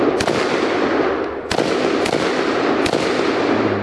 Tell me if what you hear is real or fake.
real